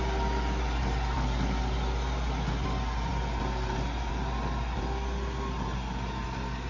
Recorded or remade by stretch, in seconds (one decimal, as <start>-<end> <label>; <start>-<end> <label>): 0.0-6.7 recorded